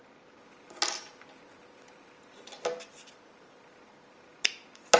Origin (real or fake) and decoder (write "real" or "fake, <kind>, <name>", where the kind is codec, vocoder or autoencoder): real